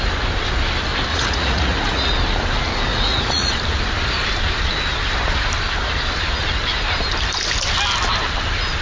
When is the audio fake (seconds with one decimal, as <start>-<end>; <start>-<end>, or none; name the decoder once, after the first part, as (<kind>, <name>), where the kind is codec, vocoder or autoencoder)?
1.1-2.1 (vocoder, Vocos); 2.9-3.5